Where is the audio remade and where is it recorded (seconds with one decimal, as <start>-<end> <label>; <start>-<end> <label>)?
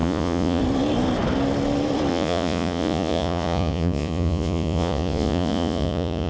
0.0-0.6 remade; 0.6-2.1 recorded; 2.1-6.3 remade